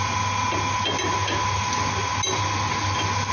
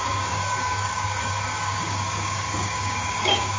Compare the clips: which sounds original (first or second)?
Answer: first